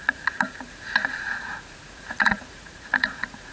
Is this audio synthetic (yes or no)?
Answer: yes